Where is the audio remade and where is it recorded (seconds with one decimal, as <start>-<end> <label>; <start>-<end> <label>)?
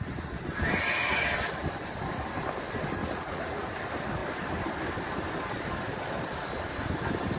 0.0-3.0 recorded; 3.0-3.6 remade; 3.6-7.4 recorded